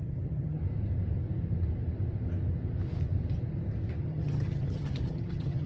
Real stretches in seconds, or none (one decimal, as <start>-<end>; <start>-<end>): 0.6-4.0